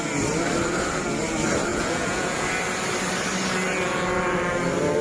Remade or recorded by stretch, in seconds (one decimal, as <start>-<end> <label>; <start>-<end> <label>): 0.0-1.7 recorded; 1.7-2.5 remade; 2.5-5.0 recorded